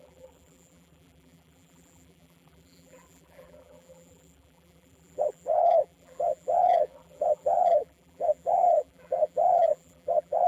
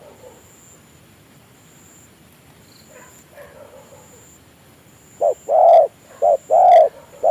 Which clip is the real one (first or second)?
second